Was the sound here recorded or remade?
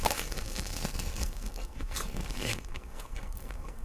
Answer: remade